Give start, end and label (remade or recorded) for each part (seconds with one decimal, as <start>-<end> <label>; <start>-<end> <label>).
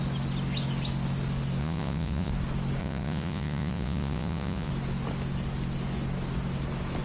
0.0-1.6 recorded; 1.6-2.3 remade; 2.3-2.8 recorded; 2.8-4.7 remade; 4.7-7.0 recorded